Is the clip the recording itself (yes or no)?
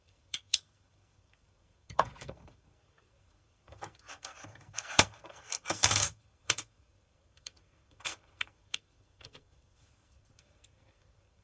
no